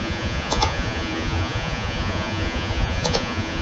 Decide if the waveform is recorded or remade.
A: remade